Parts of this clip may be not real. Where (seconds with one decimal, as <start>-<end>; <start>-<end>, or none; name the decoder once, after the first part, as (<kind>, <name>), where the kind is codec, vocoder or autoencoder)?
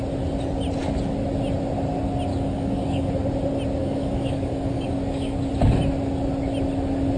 2.3-3.1 (codec, DAC); 3.8-5.5